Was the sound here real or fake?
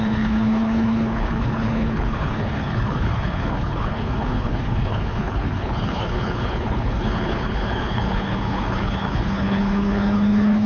fake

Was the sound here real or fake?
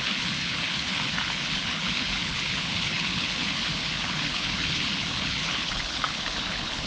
fake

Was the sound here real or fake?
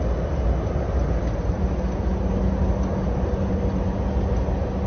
real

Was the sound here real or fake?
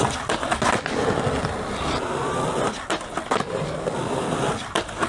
real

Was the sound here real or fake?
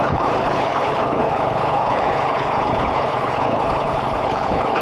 fake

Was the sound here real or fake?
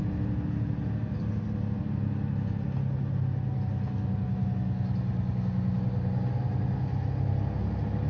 real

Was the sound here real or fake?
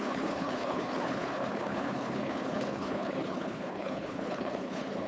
fake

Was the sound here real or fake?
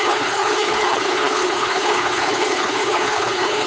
fake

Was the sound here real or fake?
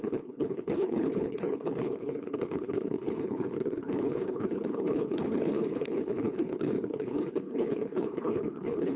fake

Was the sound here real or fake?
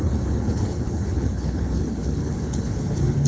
fake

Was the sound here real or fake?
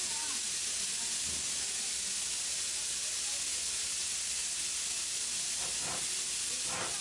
real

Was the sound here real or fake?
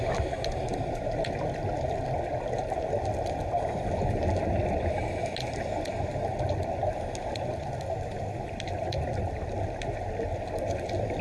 real